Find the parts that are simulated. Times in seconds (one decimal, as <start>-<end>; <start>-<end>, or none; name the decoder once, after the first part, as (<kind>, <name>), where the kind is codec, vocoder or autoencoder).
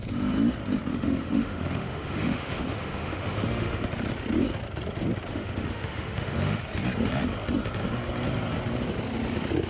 0.9-3.9 (autoencoder, DAC-VAE); 5.3-6.6